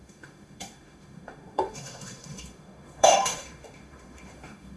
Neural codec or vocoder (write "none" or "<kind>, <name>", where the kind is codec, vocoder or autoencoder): autoencoder, DAC-VAE